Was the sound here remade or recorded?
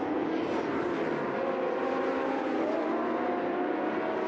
recorded